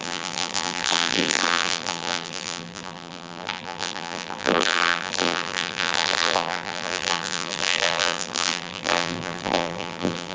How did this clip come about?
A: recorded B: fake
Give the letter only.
B